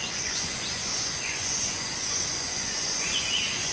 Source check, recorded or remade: remade